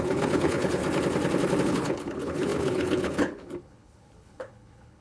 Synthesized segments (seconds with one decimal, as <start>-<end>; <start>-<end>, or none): 0.0-0.8; 1.6-5.0